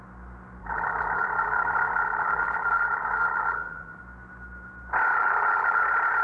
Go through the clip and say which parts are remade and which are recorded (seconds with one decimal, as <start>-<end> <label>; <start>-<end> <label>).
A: 0.0-0.6 recorded; 0.6-4.0 remade; 4.0-5.1 recorded; 5.1-5.8 remade; 5.8-6.2 recorded